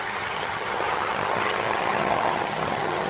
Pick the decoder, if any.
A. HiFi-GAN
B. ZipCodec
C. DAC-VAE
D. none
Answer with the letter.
A